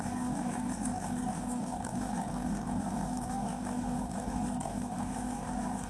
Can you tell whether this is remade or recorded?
remade